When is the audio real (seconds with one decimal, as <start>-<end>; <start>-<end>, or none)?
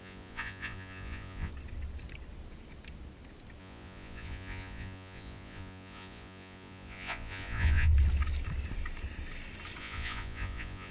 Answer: 1.5-3.6; 7.9-9.8